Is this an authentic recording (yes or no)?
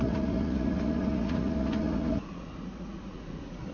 no